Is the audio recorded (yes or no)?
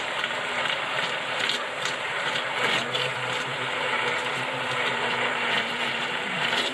no